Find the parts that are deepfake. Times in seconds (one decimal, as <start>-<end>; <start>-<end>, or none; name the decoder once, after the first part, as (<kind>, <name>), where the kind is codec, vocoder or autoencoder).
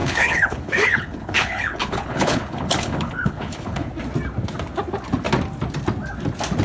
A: 0.0-3.9 (codec, HILCodec)